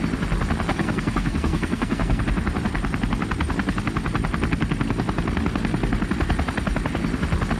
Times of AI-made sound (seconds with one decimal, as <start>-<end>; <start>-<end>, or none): 0.7-2.2